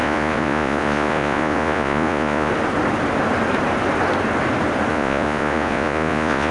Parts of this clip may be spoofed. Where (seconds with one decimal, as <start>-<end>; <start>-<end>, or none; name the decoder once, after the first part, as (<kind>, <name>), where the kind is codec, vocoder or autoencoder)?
0.0-2.5 (vocoder, Vocos); 4.9-6.5